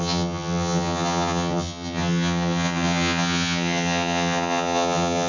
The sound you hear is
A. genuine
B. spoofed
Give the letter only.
B